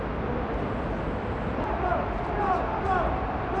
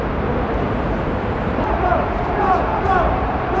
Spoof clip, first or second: second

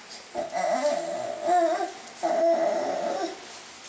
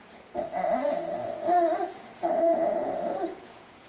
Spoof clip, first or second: second